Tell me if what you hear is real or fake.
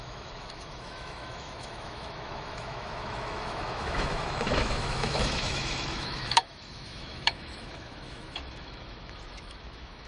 fake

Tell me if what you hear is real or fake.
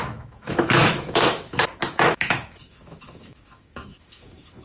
fake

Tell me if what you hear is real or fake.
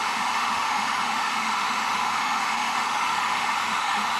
fake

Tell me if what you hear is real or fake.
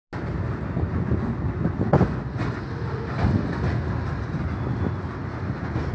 real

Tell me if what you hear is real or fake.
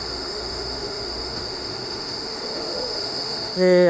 fake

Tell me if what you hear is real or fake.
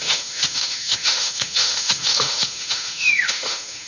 fake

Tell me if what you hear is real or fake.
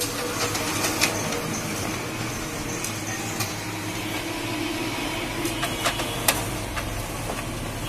real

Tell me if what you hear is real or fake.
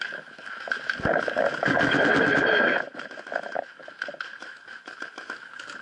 fake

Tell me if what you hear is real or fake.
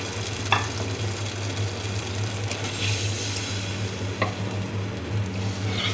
real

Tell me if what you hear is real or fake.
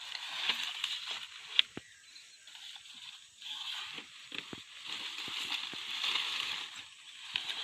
real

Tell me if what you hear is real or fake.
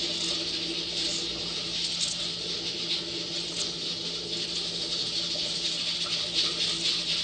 real